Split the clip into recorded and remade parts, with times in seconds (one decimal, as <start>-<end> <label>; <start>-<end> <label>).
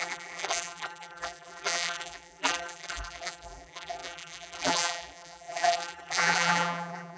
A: 0.0-7.2 remade